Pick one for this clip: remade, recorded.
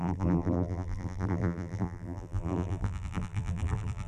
remade